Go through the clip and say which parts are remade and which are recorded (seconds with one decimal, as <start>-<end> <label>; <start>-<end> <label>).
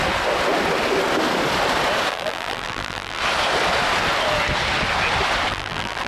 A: 0.0-2.1 recorded; 2.1-3.2 remade; 3.2-5.5 recorded; 5.5-6.1 remade